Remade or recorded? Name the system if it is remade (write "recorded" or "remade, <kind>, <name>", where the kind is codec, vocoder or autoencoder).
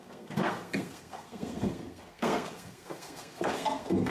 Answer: remade, codec, SNAC